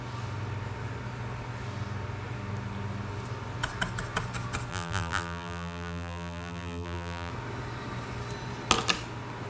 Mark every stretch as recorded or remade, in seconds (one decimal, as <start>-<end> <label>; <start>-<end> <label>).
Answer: 0.0-4.7 recorded; 4.7-7.3 remade; 7.3-9.5 recorded